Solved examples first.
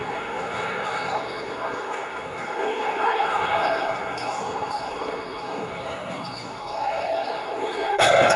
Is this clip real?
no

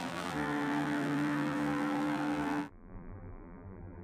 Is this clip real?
no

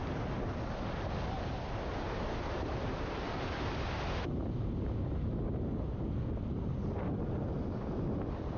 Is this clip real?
yes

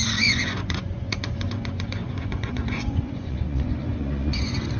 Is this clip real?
no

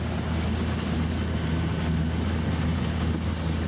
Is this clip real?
yes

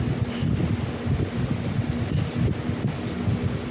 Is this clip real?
yes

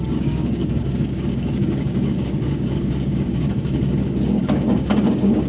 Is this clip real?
no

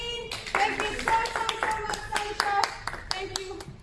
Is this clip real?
yes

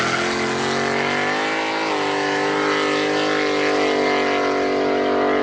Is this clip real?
yes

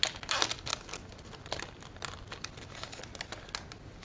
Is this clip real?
yes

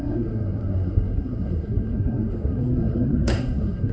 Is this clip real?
no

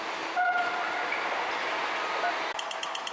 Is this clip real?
yes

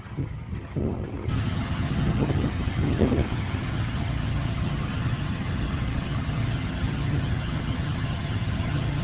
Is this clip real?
no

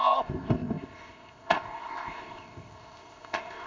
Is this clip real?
no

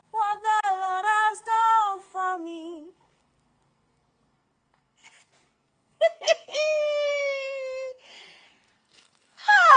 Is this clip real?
no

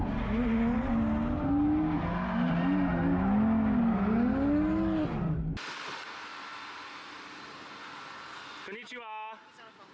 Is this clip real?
yes